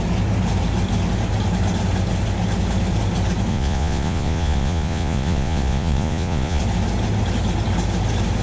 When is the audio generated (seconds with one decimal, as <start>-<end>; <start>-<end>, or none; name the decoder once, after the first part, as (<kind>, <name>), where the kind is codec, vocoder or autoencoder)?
3.5-6.6 (vocoder, Vocos)